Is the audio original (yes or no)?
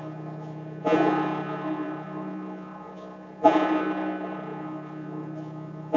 no